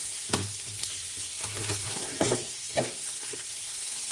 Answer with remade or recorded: remade